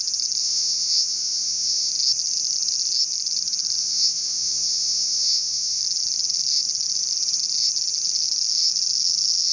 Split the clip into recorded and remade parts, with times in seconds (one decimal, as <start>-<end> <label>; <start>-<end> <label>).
0.0-0.4 recorded; 0.4-1.9 remade; 1.9-3.8 recorded; 3.8-5.8 remade; 5.8-9.5 recorded